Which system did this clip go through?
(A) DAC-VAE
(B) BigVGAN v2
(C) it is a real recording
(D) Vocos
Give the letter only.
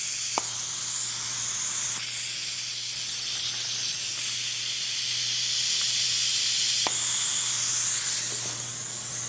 C